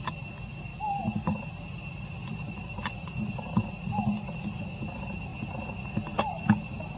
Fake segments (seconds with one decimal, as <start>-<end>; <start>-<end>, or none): none